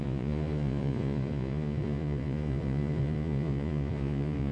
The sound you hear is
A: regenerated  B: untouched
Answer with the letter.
A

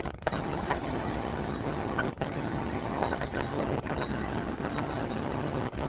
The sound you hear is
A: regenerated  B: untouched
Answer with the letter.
A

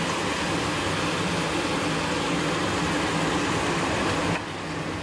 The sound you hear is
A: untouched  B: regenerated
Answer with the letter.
A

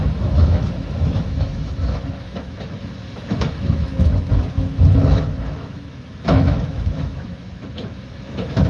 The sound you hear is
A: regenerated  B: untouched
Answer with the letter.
A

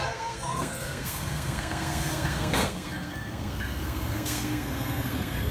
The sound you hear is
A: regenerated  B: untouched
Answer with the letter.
A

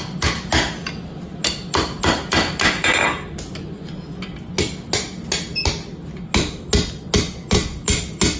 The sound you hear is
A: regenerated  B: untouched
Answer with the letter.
B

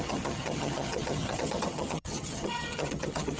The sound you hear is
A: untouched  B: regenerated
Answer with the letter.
B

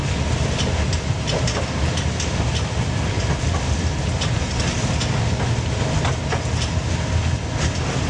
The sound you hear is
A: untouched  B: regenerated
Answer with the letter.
A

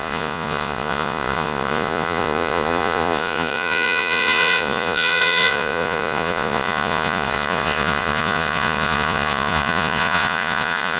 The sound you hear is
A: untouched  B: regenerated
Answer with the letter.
B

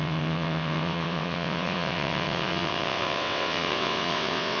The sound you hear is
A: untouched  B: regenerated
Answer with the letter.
B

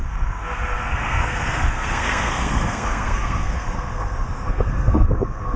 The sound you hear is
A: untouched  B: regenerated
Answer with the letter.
B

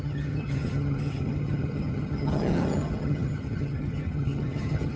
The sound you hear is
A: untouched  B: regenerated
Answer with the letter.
B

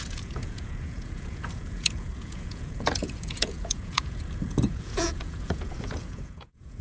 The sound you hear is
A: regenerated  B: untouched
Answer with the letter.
A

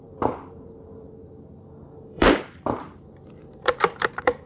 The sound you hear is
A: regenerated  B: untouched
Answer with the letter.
A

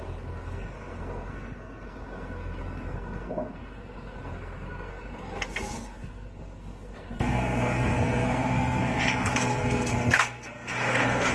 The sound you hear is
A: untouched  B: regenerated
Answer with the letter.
B